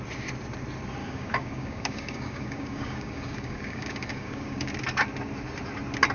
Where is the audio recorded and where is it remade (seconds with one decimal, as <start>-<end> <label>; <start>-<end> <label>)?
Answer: 0.0-1.0 recorded; 1.0-4.7 remade; 4.7-6.1 recorded